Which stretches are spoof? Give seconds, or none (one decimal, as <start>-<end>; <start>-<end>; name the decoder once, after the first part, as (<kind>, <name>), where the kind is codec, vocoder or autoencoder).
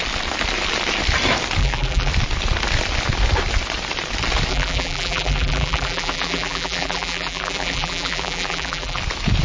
1.6-2.1 (vocoder, BigVGAN v2); 4.5-9.0